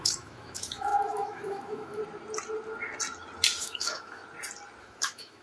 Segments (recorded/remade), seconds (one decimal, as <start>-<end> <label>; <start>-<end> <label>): 0.0-2.0 remade; 2.0-3.6 recorded; 3.6-4.2 remade; 4.2-4.8 recorded; 4.8-5.4 remade